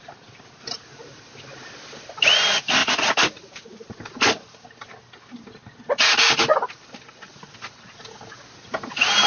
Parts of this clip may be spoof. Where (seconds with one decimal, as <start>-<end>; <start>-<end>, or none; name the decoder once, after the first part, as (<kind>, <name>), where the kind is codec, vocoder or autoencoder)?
none